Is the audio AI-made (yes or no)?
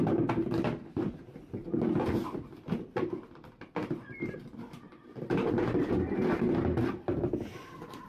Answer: no